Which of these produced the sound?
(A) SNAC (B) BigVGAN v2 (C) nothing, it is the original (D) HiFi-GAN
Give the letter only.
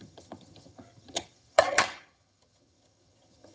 D